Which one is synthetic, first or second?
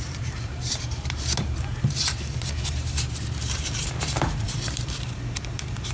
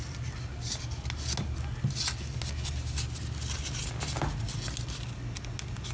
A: first